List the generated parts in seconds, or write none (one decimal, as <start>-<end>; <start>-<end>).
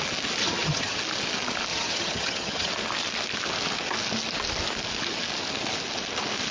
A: 0.4-1.0; 1.7-2.7